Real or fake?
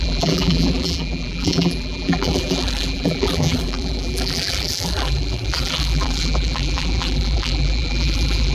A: fake